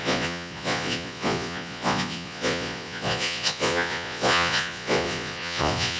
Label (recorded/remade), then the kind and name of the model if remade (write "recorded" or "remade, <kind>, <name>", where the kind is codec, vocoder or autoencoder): remade, vocoder, Vocos